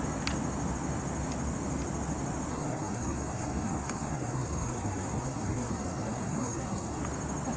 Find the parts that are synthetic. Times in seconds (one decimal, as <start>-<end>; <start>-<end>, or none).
2.5-7.0